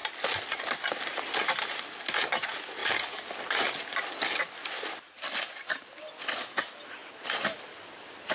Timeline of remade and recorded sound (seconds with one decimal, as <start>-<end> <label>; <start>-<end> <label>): 0.0-8.3 recorded